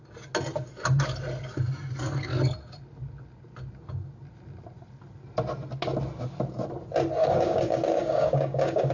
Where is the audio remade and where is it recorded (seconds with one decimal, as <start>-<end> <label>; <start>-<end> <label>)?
0.0-7.2 recorded; 7.2-8.9 remade